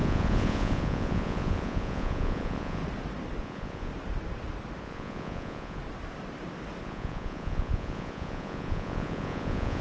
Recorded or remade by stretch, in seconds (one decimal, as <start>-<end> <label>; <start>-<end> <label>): 0.0-2.8 remade; 2.8-3.4 recorded; 3.4-3.9 remade; 3.9-4.8 recorded; 4.8-5.8 remade; 5.8-6.8 recorded; 6.8-9.8 remade